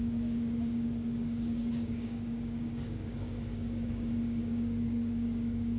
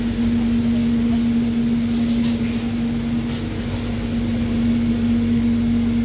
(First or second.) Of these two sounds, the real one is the second